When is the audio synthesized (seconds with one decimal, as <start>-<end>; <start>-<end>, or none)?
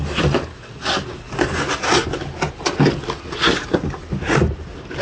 none